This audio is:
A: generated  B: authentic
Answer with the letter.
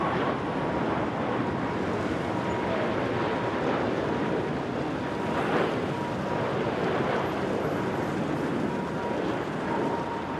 B